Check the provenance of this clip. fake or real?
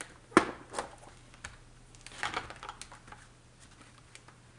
real